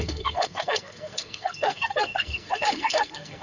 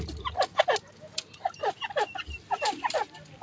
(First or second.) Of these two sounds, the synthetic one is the first